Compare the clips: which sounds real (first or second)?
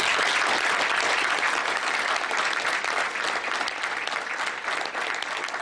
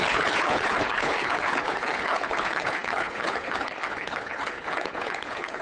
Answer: first